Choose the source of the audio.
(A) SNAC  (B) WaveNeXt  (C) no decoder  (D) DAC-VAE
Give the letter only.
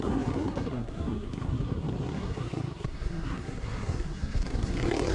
A